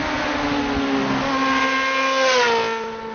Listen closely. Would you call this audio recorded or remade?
recorded